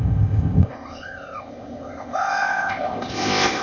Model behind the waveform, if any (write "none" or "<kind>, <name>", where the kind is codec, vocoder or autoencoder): codec, ZipCodec